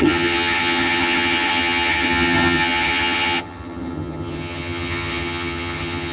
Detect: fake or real fake